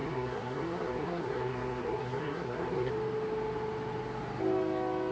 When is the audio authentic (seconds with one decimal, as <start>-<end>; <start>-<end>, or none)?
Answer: 2.9-5.1

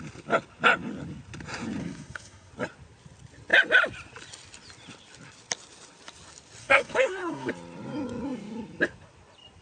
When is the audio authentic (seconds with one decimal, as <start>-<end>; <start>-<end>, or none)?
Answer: 0.0-1.8; 2.5-6.6; 7.5-9.6

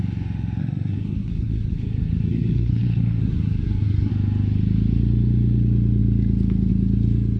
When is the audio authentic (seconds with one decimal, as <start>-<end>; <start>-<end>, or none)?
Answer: 0.0-0.6; 4.1-7.4

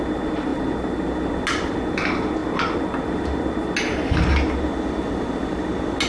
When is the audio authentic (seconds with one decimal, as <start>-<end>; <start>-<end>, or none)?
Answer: 0.0-6.1

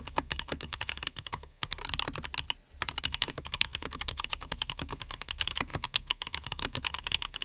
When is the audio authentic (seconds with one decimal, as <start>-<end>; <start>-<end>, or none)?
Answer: 1.8-3.0